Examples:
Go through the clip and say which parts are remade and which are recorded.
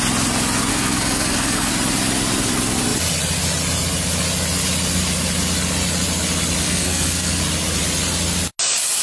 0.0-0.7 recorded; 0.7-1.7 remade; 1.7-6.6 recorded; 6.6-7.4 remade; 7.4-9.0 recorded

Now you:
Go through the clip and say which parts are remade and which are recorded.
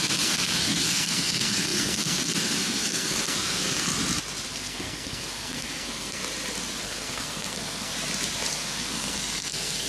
0.0-3.9 remade; 3.9-4.5 recorded; 4.5-6.2 remade; 6.2-6.8 recorded; 6.8-7.9 remade; 7.9-8.5 recorded; 8.5-9.9 remade